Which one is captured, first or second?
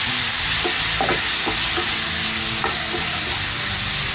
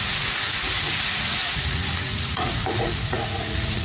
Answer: first